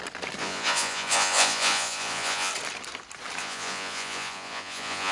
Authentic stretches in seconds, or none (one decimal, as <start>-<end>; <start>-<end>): 0.0-0.4; 2.5-3.4